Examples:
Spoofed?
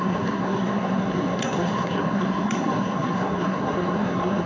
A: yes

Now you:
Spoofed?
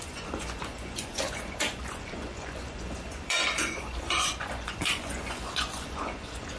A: yes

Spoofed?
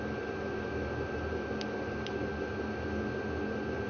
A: no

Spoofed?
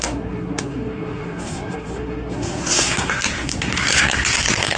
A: yes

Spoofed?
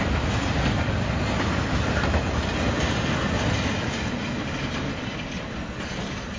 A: no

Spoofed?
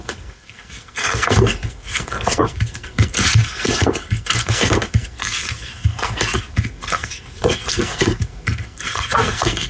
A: yes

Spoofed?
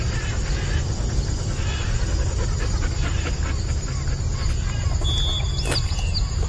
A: no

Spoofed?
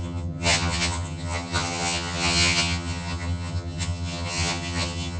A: yes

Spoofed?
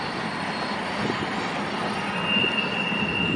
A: no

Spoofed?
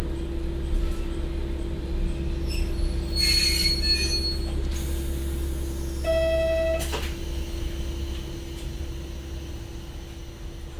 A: no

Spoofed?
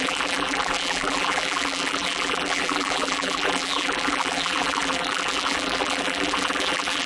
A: yes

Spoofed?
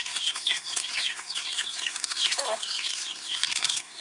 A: yes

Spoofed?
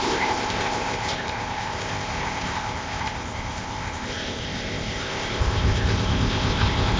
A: yes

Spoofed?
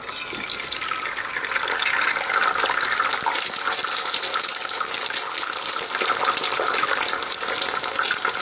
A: no